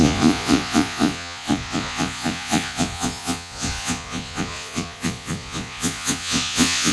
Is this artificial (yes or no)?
yes